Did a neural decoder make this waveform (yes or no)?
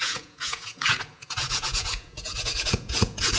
yes